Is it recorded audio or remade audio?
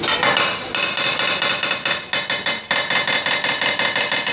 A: recorded